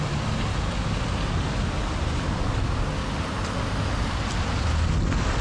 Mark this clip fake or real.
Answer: real